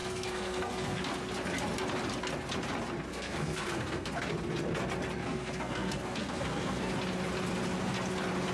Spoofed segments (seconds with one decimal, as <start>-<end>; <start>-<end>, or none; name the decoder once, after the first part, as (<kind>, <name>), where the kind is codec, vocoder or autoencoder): 0.0-1.0 (codec, SNAC); 3.1-4.2; 5.2-6.9